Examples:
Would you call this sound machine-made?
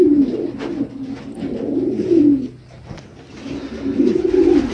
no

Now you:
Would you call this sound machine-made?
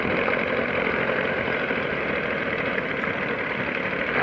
yes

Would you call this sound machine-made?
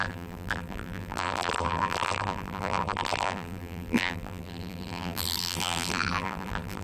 yes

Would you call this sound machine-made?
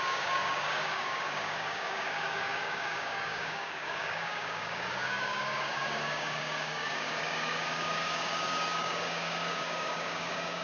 yes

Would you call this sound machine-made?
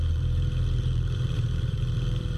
yes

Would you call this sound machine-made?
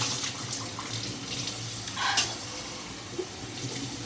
no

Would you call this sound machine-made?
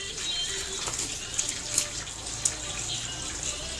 no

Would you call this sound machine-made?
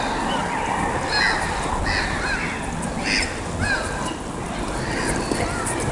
no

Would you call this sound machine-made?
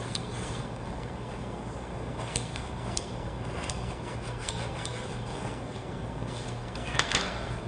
yes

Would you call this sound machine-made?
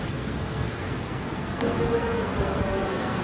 yes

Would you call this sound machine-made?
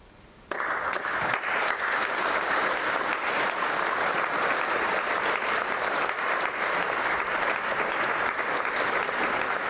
no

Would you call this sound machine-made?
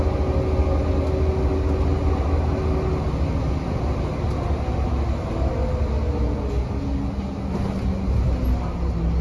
no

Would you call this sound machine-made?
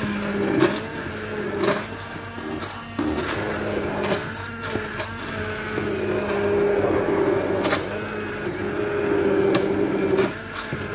no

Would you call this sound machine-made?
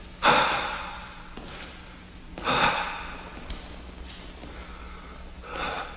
no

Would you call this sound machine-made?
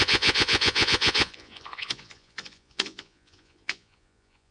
yes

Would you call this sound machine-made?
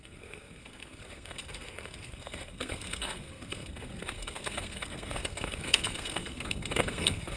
yes